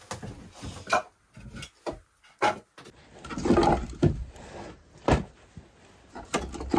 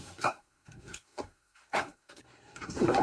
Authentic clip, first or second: first